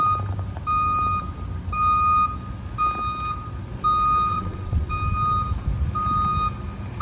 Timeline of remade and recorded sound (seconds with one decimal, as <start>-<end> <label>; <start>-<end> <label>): 0.0-4.3 recorded; 4.3-4.9 remade; 4.9-7.0 recorded